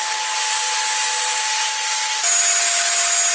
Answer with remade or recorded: recorded